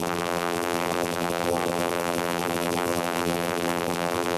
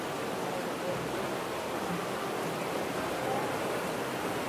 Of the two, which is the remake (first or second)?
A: first